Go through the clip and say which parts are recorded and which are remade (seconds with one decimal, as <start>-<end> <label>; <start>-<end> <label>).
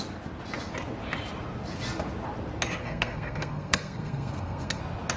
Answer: 0.0-2.8 recorded; 2.8-4.8 remade; 4.8-5.2 recorded